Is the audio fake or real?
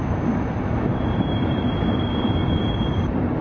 fake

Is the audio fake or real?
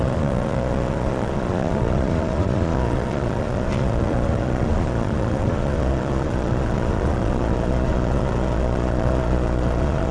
fake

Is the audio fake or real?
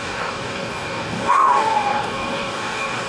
fake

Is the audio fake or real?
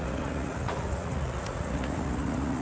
fake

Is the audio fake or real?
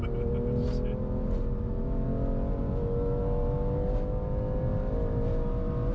real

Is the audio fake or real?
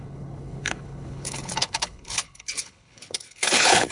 fake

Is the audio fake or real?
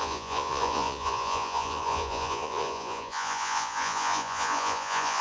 fake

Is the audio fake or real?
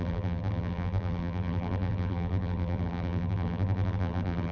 fake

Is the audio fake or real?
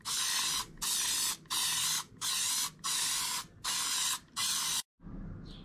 real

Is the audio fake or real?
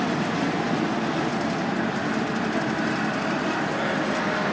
real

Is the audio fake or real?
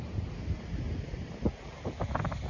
real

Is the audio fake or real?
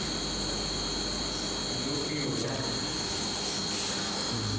real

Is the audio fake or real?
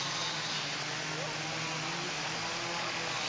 real